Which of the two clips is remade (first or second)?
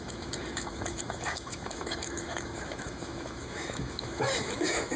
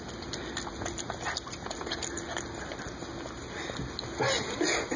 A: first